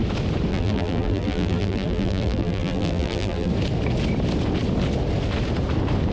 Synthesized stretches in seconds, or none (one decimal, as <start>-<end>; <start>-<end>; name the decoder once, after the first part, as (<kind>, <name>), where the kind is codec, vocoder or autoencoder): 0.5-3.5 (vocoder, BigVGAN v2)